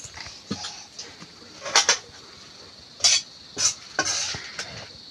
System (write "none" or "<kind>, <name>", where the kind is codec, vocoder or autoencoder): none